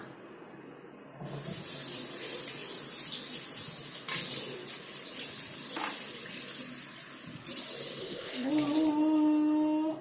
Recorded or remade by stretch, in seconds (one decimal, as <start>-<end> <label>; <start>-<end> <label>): 0.0-8.0 recorded; 8.0-8.5 remade; 8.5-10.0 recorded